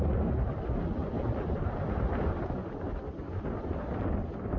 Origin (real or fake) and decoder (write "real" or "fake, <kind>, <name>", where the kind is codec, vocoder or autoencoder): real